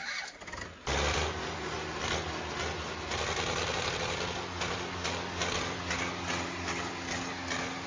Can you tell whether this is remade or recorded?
recorded